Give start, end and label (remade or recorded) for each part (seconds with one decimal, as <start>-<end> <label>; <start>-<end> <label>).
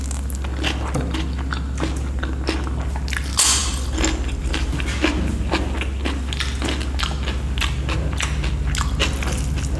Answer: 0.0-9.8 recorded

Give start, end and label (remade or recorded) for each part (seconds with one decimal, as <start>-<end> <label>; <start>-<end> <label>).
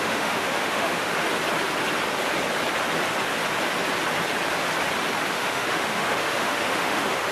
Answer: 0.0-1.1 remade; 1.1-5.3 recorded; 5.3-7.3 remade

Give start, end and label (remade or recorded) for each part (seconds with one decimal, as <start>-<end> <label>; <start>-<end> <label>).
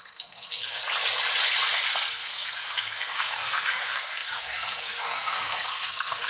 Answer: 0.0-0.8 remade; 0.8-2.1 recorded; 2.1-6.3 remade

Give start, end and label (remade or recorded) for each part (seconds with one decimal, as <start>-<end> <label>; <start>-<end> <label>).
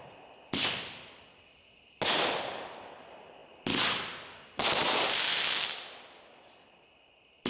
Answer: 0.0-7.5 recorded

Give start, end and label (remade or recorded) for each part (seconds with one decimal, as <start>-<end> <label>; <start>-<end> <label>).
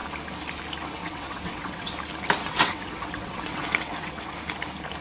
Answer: 0.0-1.0 recorded; 1.0-1.9 remade; 1.9-2.4 recorded; 2.4-4.3 remade; 4.3-5.0 recorded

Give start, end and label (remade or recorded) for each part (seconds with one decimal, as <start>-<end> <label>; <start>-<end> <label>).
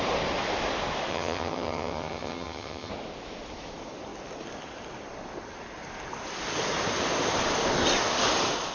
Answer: 0.0-1.1 recorded; 1.1-2.9 remade; 2.9-8.7 recorded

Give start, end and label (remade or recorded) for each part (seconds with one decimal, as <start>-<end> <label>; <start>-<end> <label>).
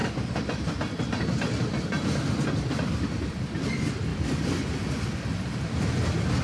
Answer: 0.0-4.1 remade; 4.1-4.7 recorded; 4.7-6.4 remade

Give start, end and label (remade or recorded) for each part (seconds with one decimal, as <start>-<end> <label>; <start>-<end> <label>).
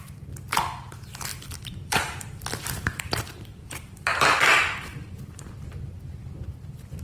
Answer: 0.0-1.3 recorded; 1.3-5.5 remade; 5.5-7.0 recorded